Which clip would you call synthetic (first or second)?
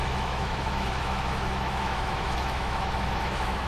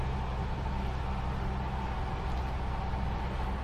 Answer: first